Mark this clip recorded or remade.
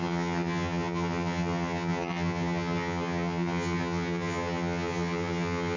remade